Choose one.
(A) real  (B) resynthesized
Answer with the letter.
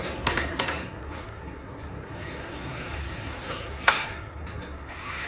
B